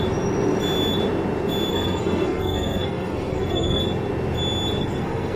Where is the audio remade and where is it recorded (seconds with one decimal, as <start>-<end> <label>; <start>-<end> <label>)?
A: 0.0-1.7 recorded; 1.7-3.8 remade; 3.8-4.8 recorded; 4.8-5.4 remade